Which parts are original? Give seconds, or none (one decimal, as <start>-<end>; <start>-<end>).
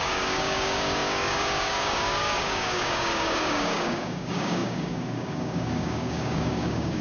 none